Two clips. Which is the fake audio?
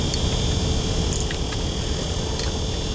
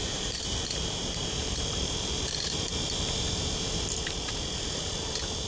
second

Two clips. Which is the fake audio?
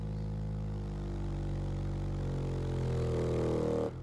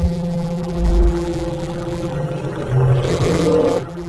second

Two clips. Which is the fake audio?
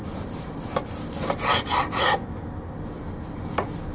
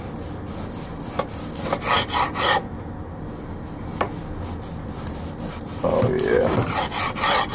first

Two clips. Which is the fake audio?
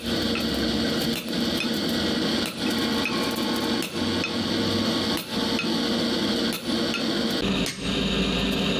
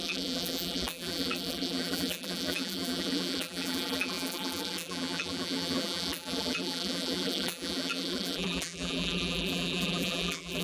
second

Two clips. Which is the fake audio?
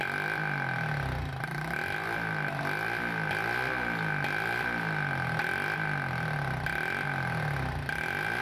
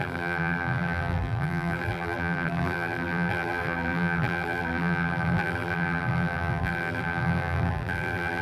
second